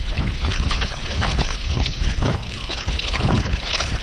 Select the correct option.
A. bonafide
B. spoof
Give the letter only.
B